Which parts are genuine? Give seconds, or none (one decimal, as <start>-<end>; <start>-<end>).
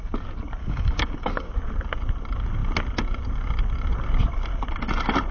0.0-0.6; 1.5-5.3